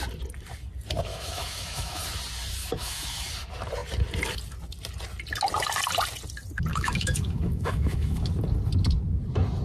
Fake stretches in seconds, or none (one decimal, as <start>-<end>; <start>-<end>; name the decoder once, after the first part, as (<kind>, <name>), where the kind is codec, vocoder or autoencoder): 1.1-2.0 (autoencoder, DAC-VAE); 2.6-3.3; 6.7-8.3